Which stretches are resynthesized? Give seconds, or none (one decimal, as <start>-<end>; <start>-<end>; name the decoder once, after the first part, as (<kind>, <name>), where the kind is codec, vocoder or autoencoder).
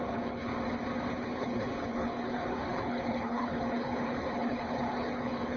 0.0-0.5 (codec, HILCodec); 1.1-5.6